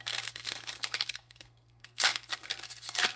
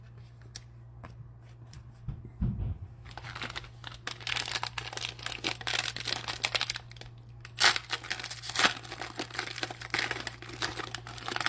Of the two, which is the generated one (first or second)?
first